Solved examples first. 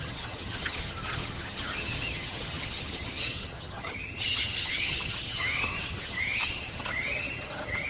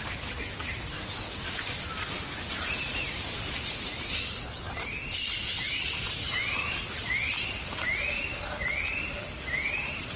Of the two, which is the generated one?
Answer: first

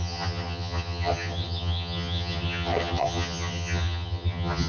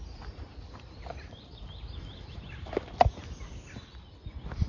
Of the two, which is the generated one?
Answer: first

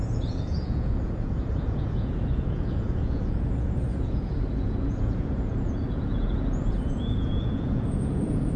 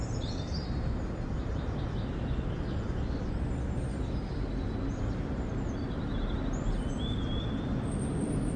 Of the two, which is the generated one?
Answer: first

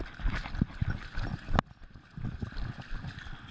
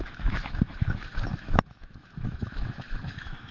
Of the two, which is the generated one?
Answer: second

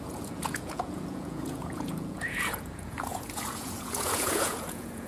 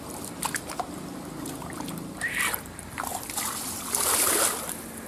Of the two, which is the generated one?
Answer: first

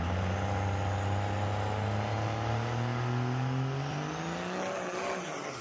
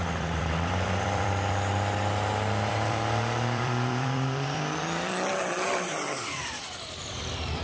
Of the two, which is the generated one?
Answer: second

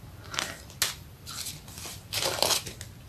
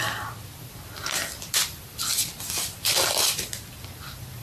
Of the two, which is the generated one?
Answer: second